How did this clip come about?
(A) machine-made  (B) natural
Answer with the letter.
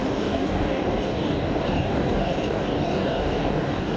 A